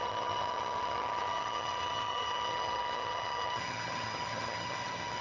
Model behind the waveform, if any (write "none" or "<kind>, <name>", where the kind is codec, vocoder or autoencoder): vocoder, HiFi-GAN